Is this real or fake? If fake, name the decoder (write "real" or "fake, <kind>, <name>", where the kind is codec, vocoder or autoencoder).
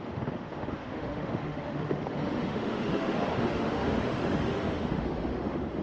fake, autoencoder, DAC-VAE